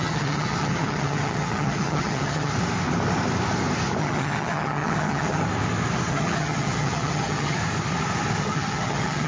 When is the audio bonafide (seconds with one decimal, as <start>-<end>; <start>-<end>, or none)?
2.5-4.0; 5.4-6.1; 7.6-8.4